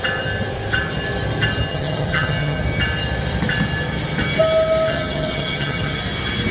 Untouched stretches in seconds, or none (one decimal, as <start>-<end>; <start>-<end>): 0.0-1.7; 2.6-4.9; 6.0-6.5